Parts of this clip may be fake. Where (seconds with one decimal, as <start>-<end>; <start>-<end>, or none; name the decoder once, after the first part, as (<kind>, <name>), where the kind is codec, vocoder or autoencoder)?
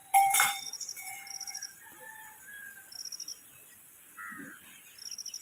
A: 0.0-2.8 (vocoder, BigVGAN v2)